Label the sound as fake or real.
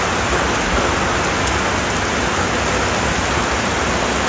real